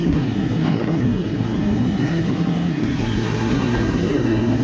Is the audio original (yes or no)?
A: no